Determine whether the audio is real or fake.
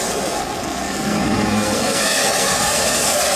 fake